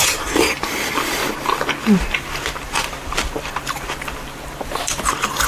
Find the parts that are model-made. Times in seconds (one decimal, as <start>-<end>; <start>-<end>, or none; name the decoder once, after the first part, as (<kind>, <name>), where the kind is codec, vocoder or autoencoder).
0.0-1.2 (vocoder, BigVGAN v2); 1.8-5.5

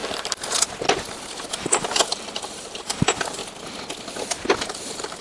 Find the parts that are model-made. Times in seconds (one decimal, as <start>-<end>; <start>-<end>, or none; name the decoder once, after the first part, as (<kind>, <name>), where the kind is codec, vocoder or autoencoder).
1.6-3.4 (vocoder, BigVGAN v2); 4.7-5.2

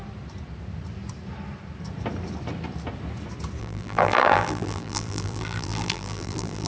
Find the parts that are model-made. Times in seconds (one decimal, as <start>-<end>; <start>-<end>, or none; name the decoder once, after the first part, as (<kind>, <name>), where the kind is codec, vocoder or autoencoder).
3.6-6.7 (vocoder, BigVGAN v2)

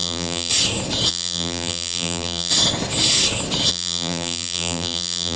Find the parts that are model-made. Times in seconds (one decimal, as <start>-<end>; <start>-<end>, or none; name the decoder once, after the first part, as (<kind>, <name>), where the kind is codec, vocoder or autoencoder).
0.0-0.5 (vocoder, BigVGAN v2); 1.1-2.5; 3.7-5.4

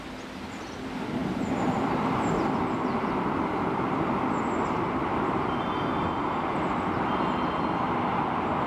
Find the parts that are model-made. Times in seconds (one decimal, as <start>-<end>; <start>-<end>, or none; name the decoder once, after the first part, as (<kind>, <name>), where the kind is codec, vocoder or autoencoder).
1.2-5.4 (vocoder, BigVGAN v2)

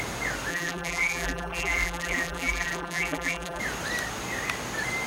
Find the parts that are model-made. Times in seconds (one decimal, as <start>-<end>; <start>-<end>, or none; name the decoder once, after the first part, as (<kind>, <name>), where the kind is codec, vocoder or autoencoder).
0.5-3.6 (vocoder, BigVGAN v2)

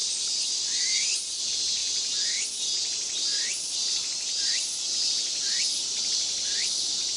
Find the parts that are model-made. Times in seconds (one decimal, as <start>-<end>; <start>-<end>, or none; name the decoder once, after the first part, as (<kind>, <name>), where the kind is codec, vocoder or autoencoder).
0.0-0.5 (vocoder, BigVGAN v2); 3.3-5.7